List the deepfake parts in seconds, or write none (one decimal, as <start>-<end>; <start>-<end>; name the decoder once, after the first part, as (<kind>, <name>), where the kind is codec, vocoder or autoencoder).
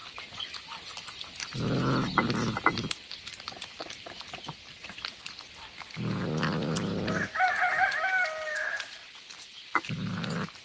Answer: none